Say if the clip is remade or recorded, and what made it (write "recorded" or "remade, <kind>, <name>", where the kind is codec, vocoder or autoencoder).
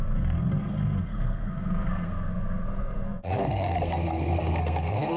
remade, codec, SNAC